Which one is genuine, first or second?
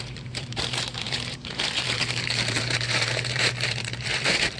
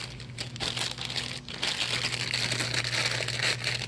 second